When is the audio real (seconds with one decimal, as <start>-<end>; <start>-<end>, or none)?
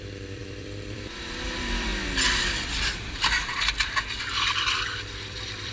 1.9-2.8